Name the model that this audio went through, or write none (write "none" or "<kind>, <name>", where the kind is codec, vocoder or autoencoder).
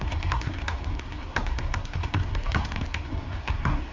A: codec, SNAC